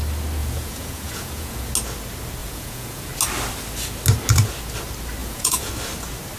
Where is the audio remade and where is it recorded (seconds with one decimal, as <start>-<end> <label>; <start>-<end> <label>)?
0.0-0.4 recorded; 0.4-1.7 remade; 1.7-2.4 recorded; 2.4-3.1 remade; 3.1-5.2 recorded; 5.2-5.7 remade; 5.7-6.4 recorded